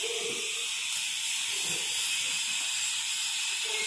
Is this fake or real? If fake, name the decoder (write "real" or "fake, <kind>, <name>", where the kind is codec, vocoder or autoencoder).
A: real